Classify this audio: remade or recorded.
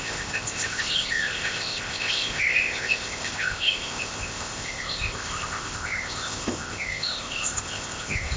remade